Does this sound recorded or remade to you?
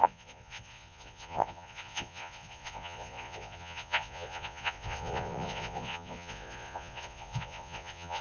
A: remade